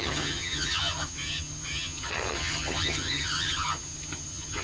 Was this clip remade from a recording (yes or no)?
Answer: yes